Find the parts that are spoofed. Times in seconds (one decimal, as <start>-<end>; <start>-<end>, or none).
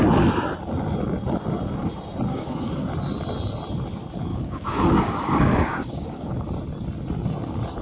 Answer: 2.3-2.9; 4.3-6.4